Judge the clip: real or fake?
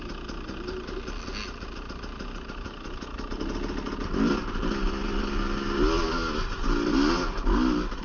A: real